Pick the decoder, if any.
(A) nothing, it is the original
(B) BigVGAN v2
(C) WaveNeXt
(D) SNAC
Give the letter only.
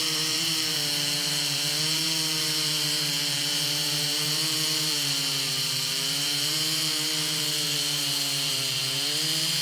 B